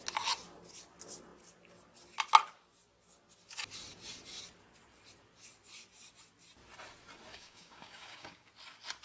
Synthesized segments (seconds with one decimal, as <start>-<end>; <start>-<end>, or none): 7.3-8.5